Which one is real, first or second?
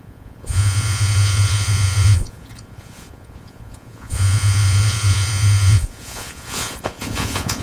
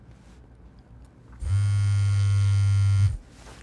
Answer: second